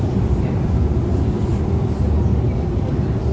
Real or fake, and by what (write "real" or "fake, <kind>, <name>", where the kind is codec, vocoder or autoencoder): real